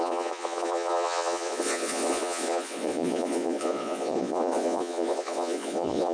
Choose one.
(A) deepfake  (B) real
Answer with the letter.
A